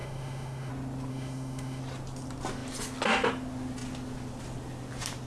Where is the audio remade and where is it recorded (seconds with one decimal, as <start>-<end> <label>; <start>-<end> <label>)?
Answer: 0.0-0.7 remade; 0.7-1.1 recorded; 1.1-1.8 remade; 1.8-5.3 recorded